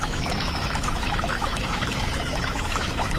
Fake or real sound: fake